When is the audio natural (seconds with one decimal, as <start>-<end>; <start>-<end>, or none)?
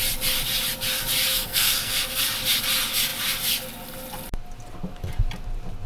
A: 0.0-1.3; 2.2-5.9